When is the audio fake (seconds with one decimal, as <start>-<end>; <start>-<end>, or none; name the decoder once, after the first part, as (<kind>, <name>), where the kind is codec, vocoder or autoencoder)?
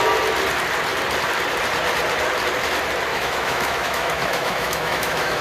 3.1-5.4 (autoencoder, DAC-VAE)